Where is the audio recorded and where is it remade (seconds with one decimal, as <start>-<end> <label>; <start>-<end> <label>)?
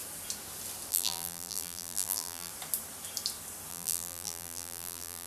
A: 0.0-0.9 recorded; 0.9-2.5 remade; 2.5-3.7 recorded; 3.7-5.3 remade